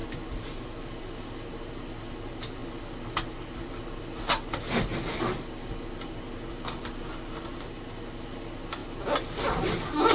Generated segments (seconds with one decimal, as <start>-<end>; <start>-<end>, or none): none